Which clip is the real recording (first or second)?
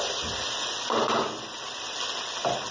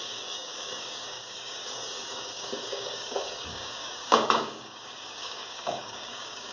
first